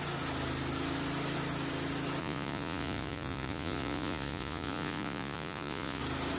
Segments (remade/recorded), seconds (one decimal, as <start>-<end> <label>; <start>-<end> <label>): 0.0-2.2 recorded; 2.2-6.0 remade; 6.0-6.4 recorded

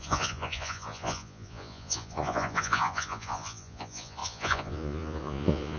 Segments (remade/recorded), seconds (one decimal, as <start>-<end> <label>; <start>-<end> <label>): 0.0-5.8 remade

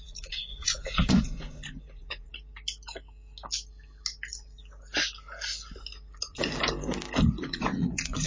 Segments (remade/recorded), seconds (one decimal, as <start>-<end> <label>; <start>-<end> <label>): 0.0-2.3 remade; 2.3-7.3 recorded; 7.3-8.3 remade

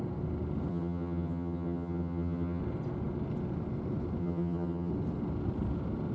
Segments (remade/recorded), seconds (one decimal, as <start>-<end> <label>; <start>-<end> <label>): 0.0-0.7 recorded; 0.7-2.6 remade; 2.6-4.2 recorded; 4.2-4.9 remade; 4.9-6.1 recorded

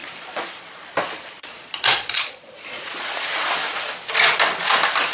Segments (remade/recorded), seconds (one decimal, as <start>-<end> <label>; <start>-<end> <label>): 0.0-3.1 remade; 3.1-5.1 recorded

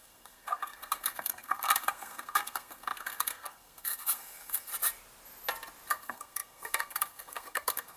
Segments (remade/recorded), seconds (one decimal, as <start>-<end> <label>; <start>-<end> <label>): 0.0-4.7 remade; 4.7-5.9 recorded; 5.9-8.0 remade